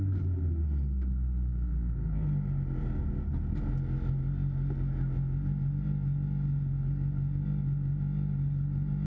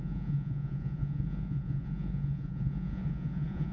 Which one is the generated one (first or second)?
second